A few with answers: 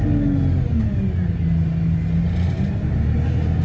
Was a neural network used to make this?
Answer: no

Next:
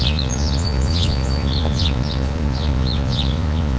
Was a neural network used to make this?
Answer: yes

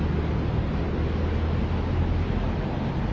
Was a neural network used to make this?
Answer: no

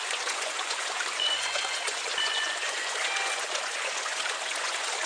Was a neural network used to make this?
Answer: yes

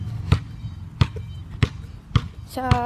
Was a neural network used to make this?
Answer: no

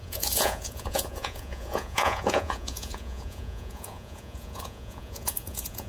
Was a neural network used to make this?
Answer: yes